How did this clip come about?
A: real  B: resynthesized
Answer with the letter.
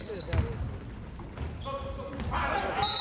A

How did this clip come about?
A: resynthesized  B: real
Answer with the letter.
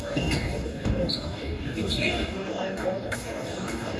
A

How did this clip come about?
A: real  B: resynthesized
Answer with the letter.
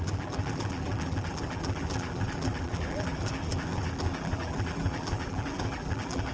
B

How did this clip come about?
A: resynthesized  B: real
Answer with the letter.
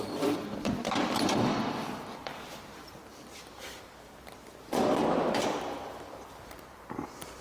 A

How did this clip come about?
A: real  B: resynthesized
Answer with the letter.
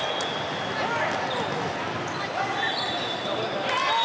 A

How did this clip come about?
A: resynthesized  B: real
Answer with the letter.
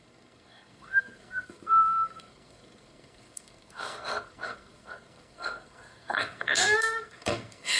A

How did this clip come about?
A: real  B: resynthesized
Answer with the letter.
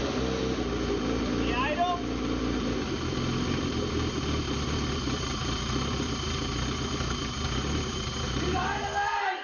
A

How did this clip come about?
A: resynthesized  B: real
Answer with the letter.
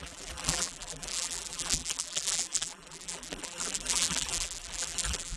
A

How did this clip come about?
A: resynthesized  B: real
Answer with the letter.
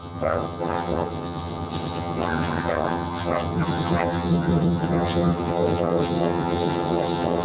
A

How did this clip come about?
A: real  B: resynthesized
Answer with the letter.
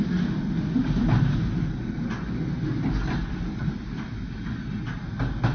A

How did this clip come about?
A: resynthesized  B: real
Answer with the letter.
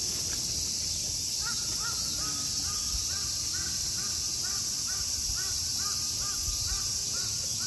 B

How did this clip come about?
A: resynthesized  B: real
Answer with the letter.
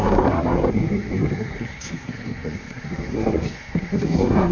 A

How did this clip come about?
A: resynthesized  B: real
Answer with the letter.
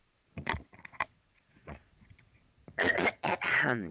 A